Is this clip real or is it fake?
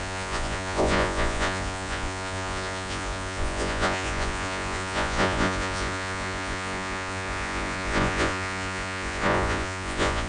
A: fake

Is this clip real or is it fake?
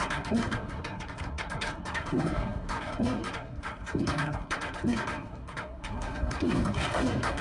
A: fake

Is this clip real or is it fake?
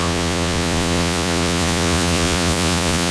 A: fake